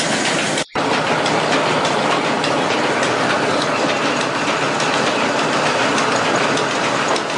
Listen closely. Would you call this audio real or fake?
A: real